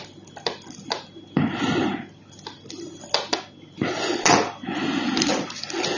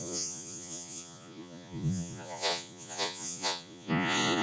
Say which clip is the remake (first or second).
second